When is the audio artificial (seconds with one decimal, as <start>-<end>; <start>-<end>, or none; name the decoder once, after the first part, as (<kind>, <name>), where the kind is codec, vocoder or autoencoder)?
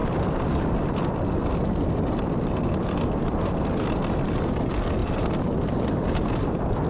3.2-4.0 (vocoder, BigVGAN v2); 5.0-5.9